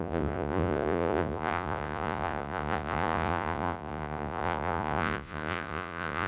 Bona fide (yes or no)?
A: no